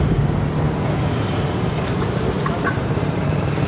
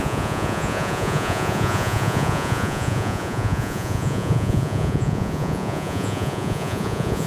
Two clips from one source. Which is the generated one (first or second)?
second